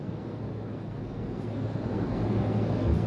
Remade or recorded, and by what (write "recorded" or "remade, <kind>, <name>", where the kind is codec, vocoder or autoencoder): remade, codec, SNAC